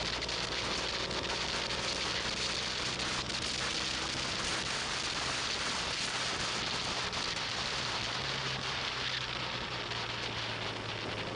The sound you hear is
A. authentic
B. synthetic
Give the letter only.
A